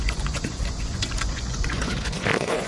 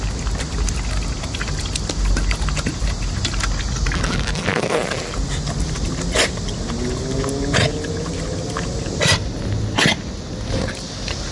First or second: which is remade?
first